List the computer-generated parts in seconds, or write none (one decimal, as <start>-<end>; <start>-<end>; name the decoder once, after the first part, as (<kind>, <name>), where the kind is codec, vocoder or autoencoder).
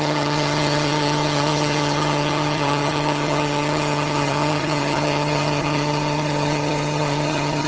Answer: 0.0-7.7 (vocoder, HiFi-GAN)